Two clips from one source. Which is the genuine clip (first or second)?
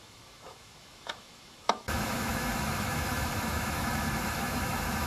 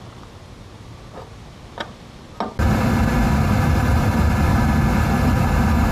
second